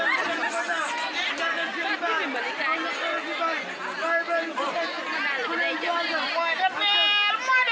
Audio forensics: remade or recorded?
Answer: recorded